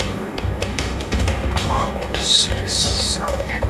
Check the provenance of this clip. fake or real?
fake